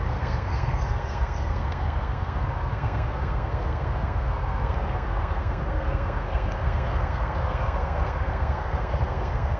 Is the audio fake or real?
fake